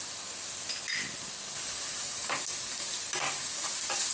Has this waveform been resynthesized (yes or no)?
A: no